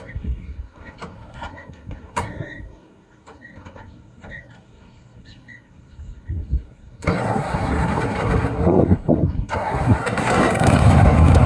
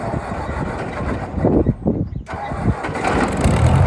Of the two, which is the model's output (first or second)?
first